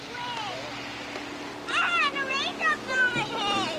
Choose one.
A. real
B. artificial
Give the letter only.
A